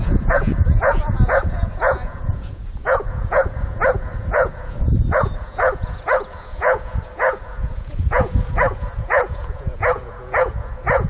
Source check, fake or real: fake